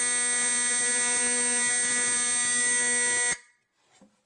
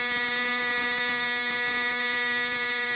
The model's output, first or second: second